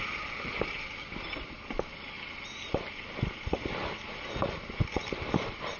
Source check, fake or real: real